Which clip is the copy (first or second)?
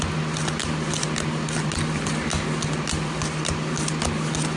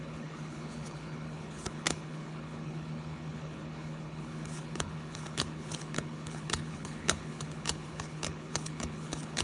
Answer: second